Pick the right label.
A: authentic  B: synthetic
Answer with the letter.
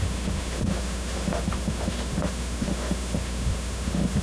B